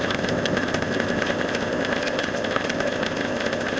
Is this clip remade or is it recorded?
remade